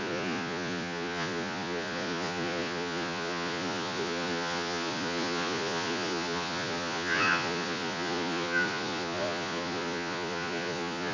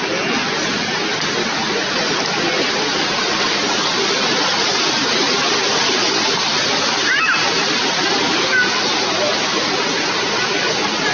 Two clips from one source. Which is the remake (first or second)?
first